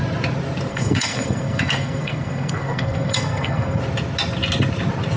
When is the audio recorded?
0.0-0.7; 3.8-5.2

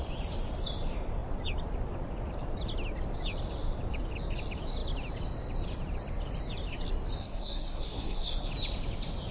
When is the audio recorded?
0.0-7.2; 8.5-9.3

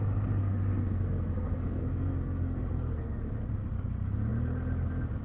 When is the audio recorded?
0.0-0.4; 3.2-5.2

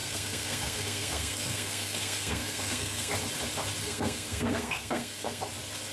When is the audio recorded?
3.1-3.8; 5.4-5.9

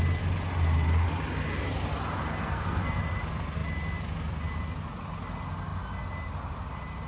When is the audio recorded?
0.0-2.4; 3.0-7.1